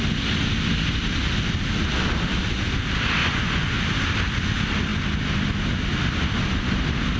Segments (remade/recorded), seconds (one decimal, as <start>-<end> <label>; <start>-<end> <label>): 0.0-3.2 recorded; 3.2-3.8 remade; 3.8-7.2 recorded